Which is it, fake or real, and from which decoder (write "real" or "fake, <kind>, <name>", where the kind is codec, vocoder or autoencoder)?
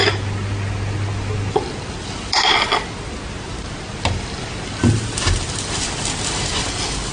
real